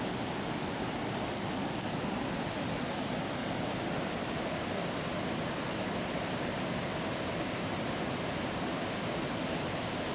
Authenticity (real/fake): real